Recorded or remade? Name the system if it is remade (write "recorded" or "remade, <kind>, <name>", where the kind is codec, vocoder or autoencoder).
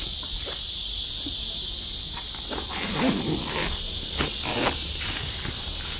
recorded